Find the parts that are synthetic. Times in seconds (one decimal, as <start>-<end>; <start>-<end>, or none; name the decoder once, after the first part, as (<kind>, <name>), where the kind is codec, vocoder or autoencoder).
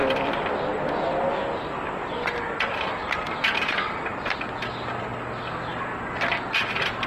0.0-1.2 (vocoder, BigVGAN v2); 3.0-4.4